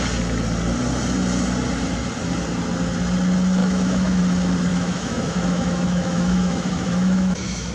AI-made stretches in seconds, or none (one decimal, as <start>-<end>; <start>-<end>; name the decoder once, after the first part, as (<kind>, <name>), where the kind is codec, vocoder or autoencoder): 3.6-4.2 (autoencoder, DAC-VAE); 4.7-7.7